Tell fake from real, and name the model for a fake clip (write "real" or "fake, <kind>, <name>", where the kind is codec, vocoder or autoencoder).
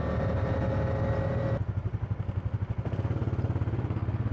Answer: real